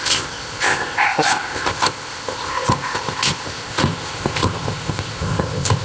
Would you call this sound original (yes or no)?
no